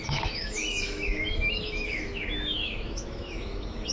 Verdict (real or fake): fake